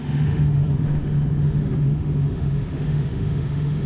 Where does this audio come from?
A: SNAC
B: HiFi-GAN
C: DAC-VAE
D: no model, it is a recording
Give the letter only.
C